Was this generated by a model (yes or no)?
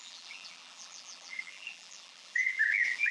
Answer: yes